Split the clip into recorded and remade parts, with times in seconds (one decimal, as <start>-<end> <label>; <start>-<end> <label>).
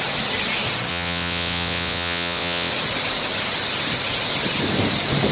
0.0-0.9 recorded; 0.9-2.7 remade; 2.7-5.3 recorded